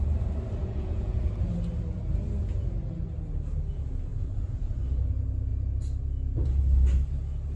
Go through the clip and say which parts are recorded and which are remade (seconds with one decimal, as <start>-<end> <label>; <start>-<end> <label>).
0.0-0.6 recorded; 0.6-1.2 remade; 1.2-4.1 recorded; 4.1-4.8 remade; 4.8-7.6 recorded